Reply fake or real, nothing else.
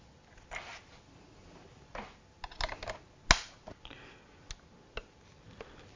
real